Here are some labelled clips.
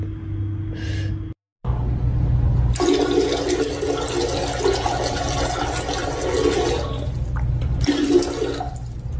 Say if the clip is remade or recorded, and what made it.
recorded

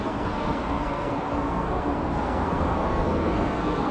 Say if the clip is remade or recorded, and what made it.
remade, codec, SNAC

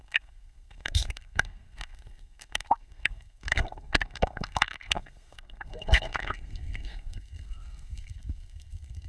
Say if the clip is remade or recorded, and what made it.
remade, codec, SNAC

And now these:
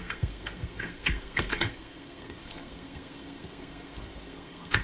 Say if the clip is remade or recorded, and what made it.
remade, codec, SNAC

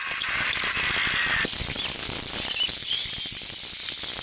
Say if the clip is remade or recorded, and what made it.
recorded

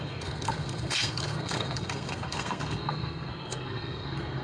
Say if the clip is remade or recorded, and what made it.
remade, codec, SNAC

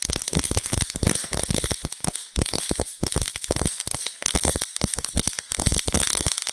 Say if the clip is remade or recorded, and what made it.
remade, codec, SNAC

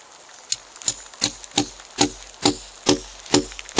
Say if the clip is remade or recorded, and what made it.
recorded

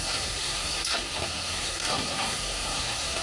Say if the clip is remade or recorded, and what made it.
remade, codec, SNAC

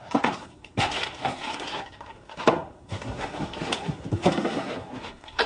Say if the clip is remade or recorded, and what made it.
remade, codec, SNAC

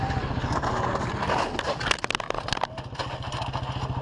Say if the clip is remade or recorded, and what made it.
recorded